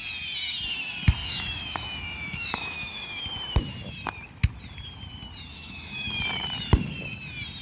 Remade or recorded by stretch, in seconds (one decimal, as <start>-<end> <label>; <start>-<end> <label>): 0.0-1.2 recorded; 1.2-3.2 remade; 3.2-5.5 recorded; 5.5-6.2 remade; 6.2-7.6 recorded